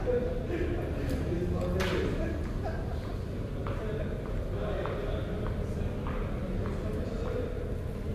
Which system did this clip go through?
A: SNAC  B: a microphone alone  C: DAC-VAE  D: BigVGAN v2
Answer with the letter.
B